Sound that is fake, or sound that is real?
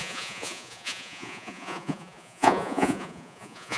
fake